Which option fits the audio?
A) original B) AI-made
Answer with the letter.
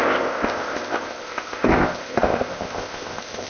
B